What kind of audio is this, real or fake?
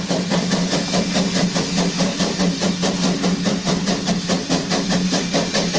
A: real